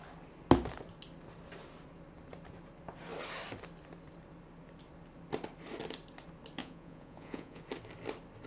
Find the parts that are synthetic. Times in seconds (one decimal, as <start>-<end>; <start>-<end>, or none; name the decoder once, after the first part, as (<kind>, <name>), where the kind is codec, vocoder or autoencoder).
6.6-7.6 (vocoder, Vocos)